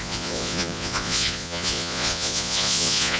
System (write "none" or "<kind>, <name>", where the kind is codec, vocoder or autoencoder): vocoder, Vocos